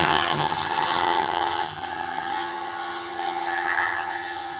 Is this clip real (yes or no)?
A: no